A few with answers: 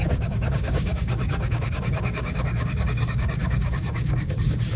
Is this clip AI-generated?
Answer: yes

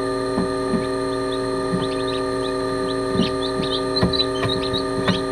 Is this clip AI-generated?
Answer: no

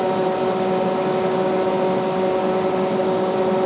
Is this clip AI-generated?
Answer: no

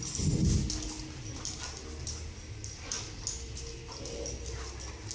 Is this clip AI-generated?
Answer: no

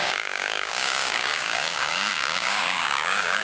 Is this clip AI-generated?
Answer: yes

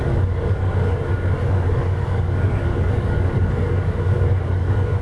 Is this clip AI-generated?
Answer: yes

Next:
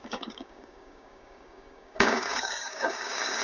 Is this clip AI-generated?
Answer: yes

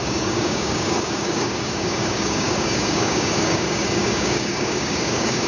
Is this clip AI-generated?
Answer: yes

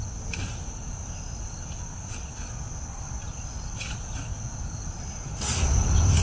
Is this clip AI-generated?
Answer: no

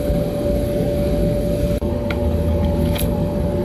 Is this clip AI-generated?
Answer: yes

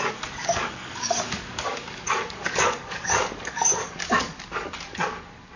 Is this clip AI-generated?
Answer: yes